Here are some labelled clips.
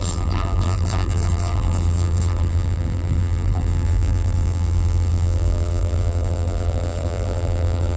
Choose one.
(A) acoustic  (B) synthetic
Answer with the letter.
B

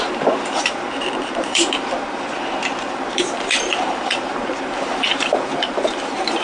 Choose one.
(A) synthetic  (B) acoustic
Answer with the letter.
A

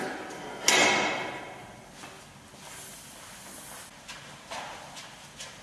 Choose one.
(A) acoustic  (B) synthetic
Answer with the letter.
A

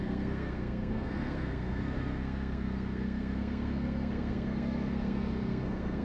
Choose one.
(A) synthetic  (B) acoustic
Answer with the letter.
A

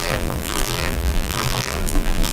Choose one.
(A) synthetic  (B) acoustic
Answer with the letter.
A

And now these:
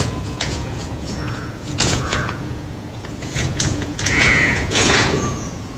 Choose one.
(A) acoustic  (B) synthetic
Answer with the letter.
B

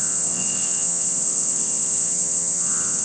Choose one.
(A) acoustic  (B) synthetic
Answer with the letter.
B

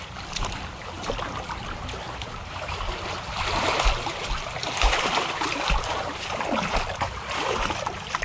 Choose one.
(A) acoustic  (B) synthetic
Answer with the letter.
A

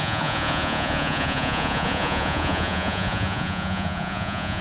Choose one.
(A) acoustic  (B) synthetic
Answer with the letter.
B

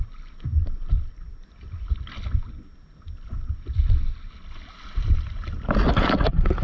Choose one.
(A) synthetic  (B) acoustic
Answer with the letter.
B